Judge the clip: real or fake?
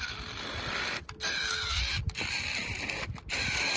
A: real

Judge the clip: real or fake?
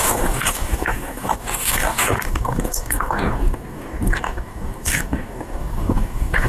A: fake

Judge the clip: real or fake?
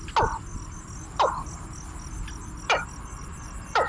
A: real